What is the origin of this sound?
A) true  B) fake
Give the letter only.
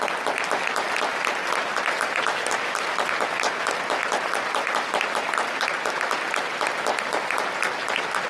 A